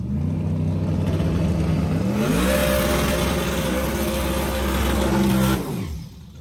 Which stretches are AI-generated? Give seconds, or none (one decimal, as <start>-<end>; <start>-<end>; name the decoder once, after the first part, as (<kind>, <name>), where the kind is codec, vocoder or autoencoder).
none